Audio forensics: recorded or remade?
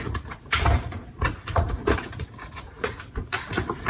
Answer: remade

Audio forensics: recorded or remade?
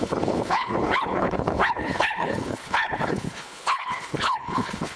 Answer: remade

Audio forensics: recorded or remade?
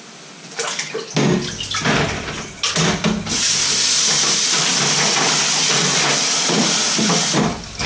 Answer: recorded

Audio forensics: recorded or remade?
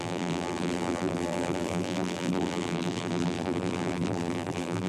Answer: remade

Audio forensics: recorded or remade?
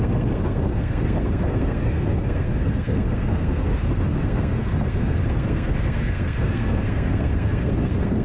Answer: remade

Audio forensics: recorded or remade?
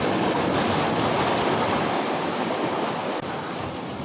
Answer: recorded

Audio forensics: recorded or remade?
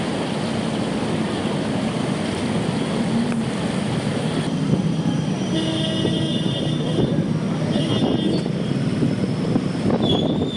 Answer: recorded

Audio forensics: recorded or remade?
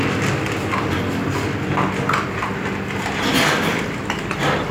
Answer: recorded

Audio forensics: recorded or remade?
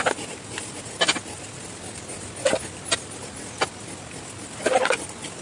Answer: recorded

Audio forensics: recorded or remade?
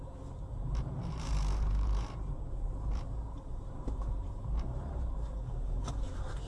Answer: remade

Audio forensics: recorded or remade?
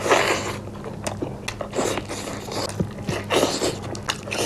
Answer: recorded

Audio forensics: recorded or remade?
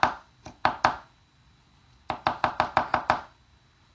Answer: recorded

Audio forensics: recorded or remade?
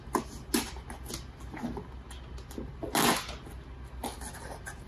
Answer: recorded